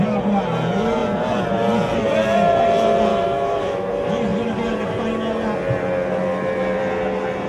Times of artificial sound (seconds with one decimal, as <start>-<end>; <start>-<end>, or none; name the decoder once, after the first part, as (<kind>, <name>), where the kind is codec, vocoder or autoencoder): 3.1-3.9 (autoencoder, DAC-VAE)